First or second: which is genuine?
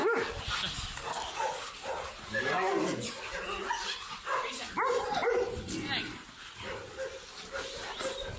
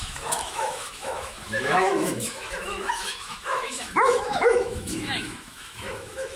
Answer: first